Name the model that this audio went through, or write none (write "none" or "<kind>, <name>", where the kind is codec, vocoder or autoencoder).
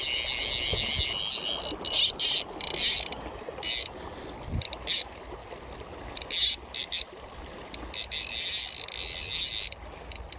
none